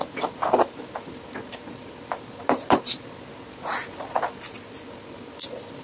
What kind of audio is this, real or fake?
real